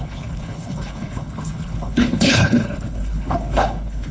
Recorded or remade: remade